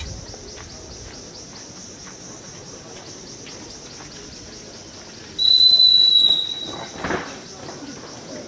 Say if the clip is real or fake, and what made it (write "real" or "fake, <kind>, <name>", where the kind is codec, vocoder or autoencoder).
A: real